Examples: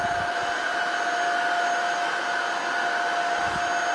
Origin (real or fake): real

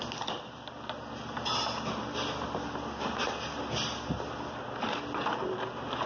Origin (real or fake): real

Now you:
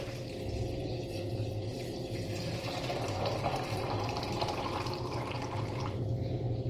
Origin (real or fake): fake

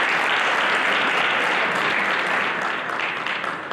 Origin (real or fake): real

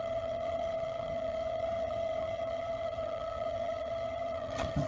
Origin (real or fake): fake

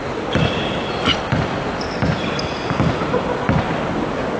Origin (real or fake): fake